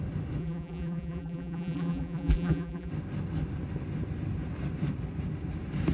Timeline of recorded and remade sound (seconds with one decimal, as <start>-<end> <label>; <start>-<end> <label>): 0.0-0.4 recorded; 0.4-2.9 remade; 2.9-5.9 recorded